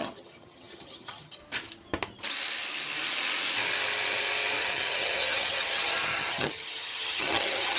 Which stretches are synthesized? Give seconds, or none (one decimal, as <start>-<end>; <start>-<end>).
0.0-1.4; 4.6-7.8